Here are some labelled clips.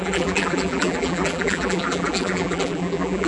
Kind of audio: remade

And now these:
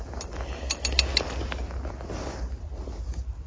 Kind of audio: recorded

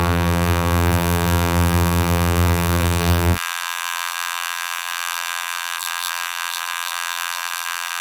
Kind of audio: remade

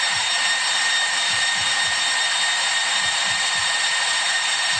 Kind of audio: remade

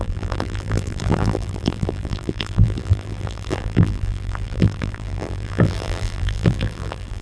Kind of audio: remade